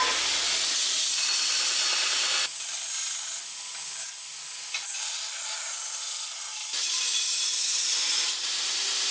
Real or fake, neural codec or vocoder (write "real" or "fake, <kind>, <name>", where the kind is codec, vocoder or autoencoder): real